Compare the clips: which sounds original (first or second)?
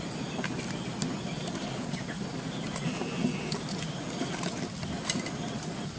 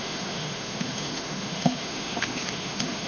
first